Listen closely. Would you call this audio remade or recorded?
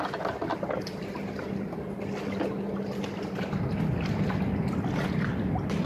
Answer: recorded